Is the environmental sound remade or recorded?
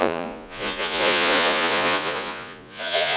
remade